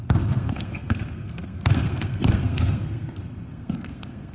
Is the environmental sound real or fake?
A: fake